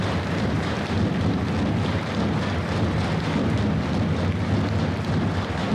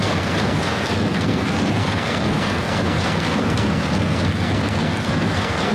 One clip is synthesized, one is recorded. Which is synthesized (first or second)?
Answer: second